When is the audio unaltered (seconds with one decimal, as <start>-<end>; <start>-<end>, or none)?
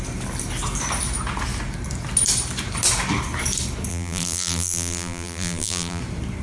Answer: 0.0-3.9; 6.0-6.4